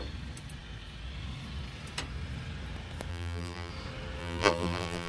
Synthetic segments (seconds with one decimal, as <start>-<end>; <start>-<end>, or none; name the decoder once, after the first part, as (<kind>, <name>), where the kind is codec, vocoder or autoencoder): 3.1-3.7 (vocoder, BigVGAN v2); 4.2-5.1